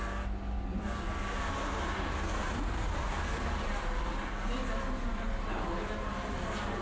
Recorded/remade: recorded